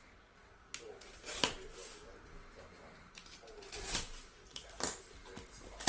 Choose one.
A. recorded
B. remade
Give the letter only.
A